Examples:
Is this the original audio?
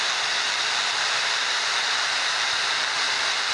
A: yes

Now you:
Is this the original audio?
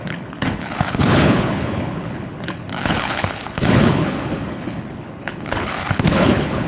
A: no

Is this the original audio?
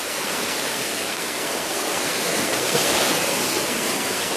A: no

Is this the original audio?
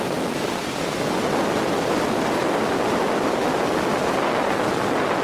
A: yes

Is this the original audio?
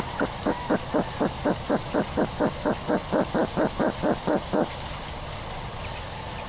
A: yes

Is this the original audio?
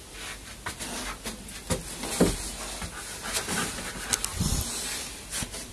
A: yes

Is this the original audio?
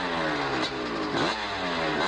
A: yes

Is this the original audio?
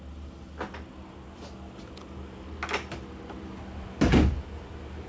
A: yes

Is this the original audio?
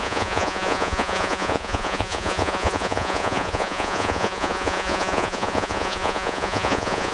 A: no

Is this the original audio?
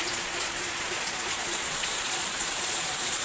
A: no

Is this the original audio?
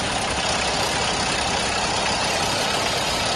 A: yes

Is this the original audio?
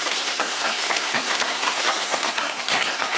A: no